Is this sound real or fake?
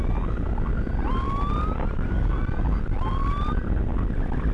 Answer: real